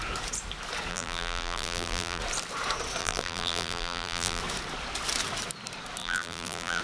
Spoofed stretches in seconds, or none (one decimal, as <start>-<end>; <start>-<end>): 0.9-2.2; 3.0-4.4; 6.0-6.8